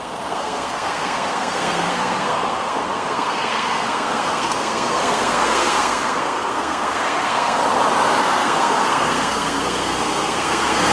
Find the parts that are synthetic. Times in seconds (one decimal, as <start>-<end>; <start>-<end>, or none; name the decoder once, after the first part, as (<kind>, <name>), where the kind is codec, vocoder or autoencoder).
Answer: 0.0-7.6 (codec, SNAC); 8.2-10.9